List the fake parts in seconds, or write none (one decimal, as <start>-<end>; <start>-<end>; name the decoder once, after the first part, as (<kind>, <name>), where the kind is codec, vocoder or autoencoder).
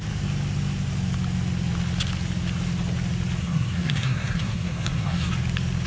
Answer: 3.4-5.3 (codec, SNAC)